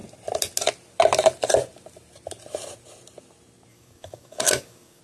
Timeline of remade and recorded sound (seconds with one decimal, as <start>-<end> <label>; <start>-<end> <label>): 0.0-3.7 recorded; 3.7-5.0 remade